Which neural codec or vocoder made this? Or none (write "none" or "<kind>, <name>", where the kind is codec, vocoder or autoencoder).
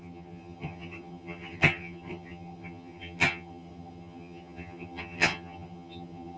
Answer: vocoder, HiFi-GAN